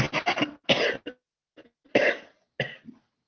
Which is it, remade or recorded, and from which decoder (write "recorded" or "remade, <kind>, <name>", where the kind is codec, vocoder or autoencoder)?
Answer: recorded